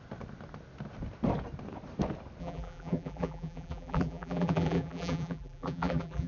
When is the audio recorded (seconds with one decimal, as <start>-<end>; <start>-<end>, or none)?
0.0-2.4